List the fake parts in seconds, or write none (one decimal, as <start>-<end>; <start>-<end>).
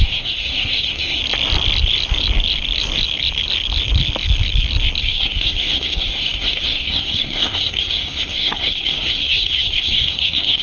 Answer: 0.0-1.2; 5.0-10.6